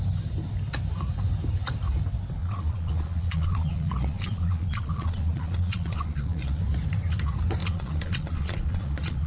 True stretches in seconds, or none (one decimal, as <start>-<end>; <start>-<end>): 0.0-2.4; 6.6-7.6